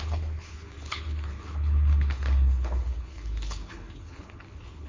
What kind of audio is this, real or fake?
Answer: fake